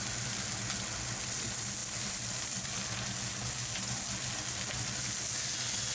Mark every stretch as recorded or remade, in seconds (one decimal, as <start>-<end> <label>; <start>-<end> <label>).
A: 0.0-5.9 recorded

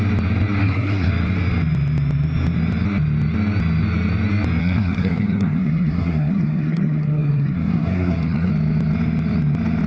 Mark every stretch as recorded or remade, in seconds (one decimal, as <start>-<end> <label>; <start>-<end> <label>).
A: 0.0-0.6 recorded; 0.6-1.1 remade; 1.1-4.6 recorded; 4.6-8.5 remade; 8.5-9.9 recorded

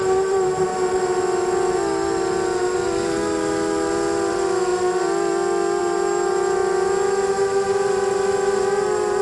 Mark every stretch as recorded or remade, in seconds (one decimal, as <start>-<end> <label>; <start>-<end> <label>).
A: 0.0-0.7 remade; 0.7-4.3 recorded; 4.3-4.7 remade; 4.7-5.8 recorded; 5.8-9.2 remade

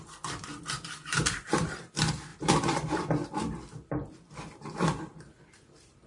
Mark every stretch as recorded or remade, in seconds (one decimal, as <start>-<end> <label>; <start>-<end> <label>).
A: 0.0-6.1 remade

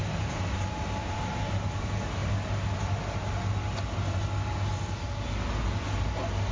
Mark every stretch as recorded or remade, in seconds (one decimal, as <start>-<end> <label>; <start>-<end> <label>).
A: 0.0-1.3 remade; 1.3-6.5 recorded

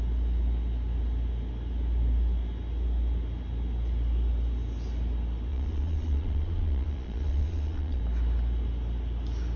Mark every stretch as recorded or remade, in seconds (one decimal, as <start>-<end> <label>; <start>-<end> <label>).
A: 0.0-5.5 recorded; 5.5-8.0 remade; 8.0-9.6 recorded

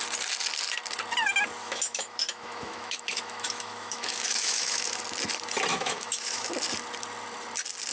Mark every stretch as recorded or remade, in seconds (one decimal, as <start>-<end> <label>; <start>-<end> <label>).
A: 0.0-1.6 recorded; 1.6-5.0 remade; 5.0-5.7 recorded; 5.7-6.5 remade; 6.5-7.9 recorded